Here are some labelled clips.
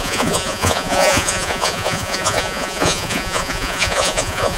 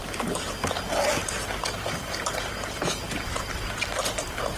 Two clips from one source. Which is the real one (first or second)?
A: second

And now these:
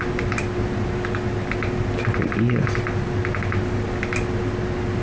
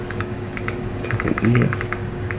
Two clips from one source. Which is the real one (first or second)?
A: first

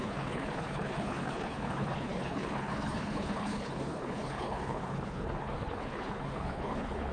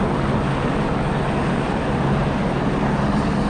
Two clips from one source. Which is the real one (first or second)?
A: second